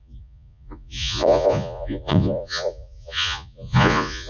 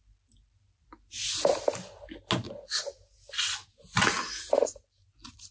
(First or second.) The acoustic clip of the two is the second